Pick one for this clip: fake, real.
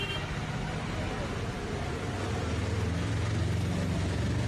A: real